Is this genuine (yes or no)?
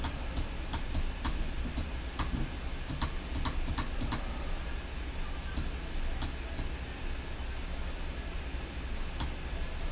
yes